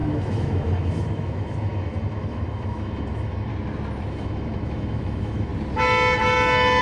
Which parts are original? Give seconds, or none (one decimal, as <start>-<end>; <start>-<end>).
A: 3.5-4.1; 5.5-6.8